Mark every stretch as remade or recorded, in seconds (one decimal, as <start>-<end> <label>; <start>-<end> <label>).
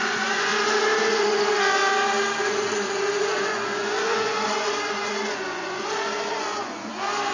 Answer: 0.0-0.5 remade; 0.5-1.0 recorded; 1.0-1.8 remade; 1.8-2.4 recorded; 2.4-7.3 remade